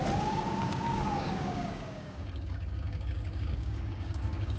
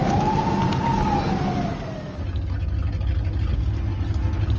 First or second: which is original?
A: second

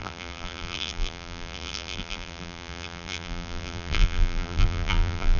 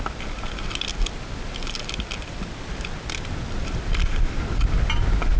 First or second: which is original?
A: second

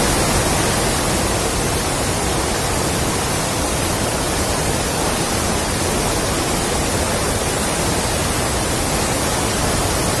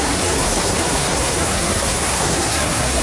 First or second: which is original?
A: first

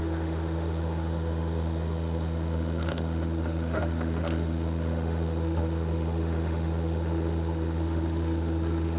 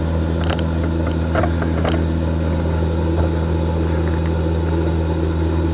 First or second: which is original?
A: second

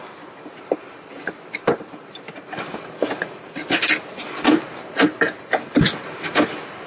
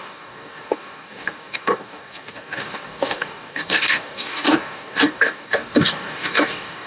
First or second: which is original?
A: first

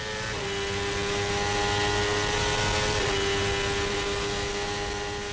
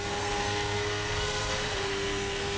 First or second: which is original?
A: first